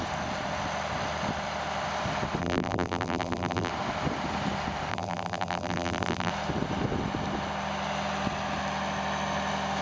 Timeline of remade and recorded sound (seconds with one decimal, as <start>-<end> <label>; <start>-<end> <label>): 0.0-2.4 recorded; 2.4-3.7 remade; 3.7-4.9 recorded; 4.9-6.3 remade; 6.3-9.8 recorded